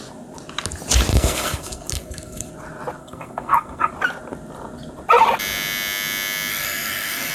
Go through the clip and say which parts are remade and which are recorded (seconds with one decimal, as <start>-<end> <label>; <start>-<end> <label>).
0.0-1.1 recorded; 1.1-2.5 remade; 2.5-3.0 recorded; 3.0-3.9 remade; 3.9-6.5 recorded; 6.5-7.3 remade